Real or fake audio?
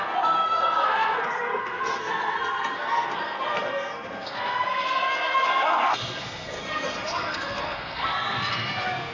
fake